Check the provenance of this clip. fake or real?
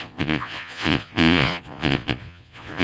fake